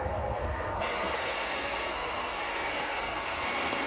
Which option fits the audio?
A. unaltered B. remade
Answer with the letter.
B